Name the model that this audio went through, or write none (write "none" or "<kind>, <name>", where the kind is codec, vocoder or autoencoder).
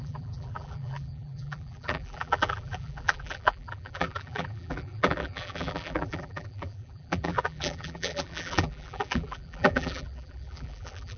vocoder, BigVGAN v2